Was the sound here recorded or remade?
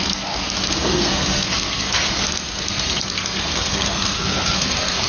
remade